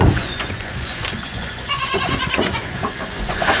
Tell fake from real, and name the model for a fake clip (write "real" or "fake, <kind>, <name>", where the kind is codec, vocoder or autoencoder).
fake, vocoder, Vocos